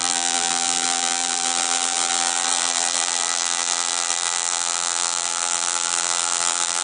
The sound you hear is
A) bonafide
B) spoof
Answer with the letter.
B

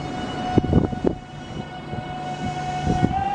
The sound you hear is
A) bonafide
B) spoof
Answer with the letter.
A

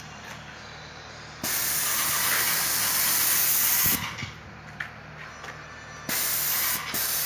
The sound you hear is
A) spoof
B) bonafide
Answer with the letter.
B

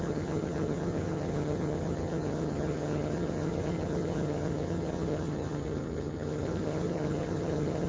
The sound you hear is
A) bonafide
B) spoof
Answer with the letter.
B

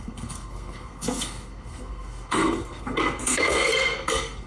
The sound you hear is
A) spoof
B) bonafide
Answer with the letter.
A